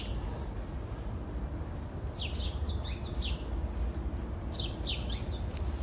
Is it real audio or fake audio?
real